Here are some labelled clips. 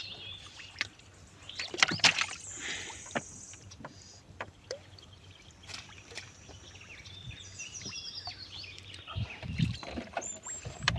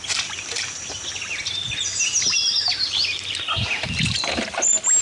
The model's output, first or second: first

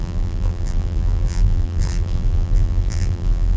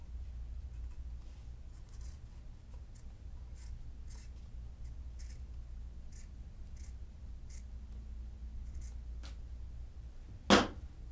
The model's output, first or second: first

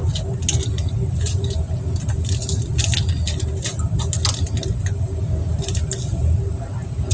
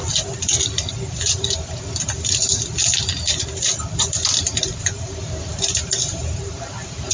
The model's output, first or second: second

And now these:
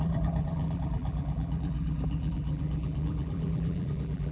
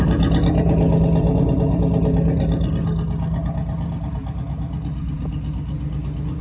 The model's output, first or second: first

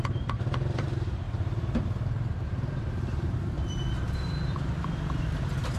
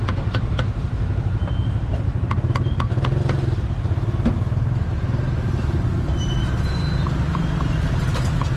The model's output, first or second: first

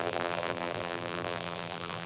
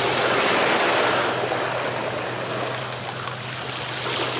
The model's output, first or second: first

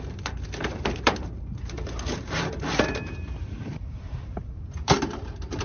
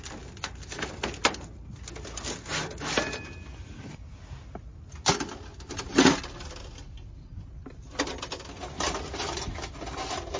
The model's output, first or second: first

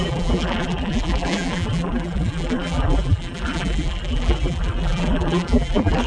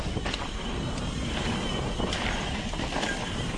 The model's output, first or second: first